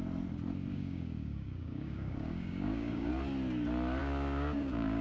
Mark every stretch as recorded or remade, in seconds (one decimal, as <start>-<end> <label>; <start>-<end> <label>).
0.0-0.7 recorded; 0.7-3.1 remade; 3.1-4.0 recorded; 4.0-5.0 remade